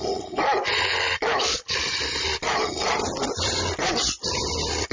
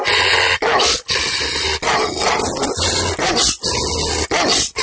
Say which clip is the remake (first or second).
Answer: first